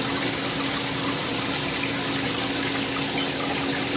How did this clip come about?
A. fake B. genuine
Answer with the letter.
B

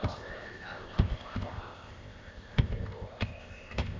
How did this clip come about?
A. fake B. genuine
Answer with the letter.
A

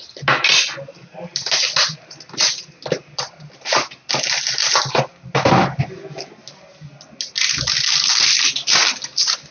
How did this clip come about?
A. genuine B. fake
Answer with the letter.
A